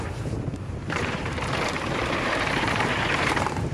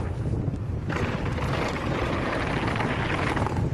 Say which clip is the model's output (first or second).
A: first